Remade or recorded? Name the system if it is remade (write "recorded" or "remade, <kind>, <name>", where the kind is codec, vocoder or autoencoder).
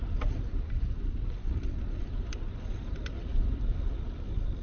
remade, vocoder, BigVGAN v2